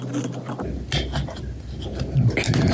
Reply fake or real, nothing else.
real